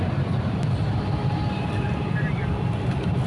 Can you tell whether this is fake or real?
real